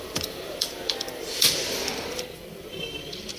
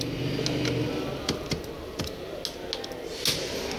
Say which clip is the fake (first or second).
first